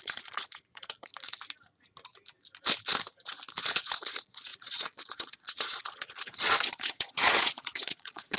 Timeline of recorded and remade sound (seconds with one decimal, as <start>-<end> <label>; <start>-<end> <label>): 0.0-1.1 remade; 1.1-3.6 recorded; 3.6-8.4 remade

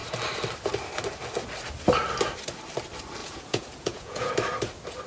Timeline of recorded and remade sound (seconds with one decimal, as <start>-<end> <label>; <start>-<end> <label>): 0.0-3.2 recorded; 3.2-4.3 remade; 4.3-5.1 recorded

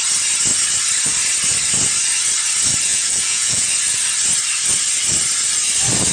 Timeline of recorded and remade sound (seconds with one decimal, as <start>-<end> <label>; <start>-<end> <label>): 0.0-2.9 recorded; 2.9-3.7 remade; 3.7-6.1 recorded

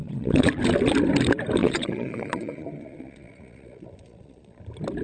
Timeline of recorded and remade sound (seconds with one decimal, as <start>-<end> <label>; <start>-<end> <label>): 0.0-0.6 remade; 0.6-1.6 recorded; 1.6-4.6 remade; 4.6-5.0 recorded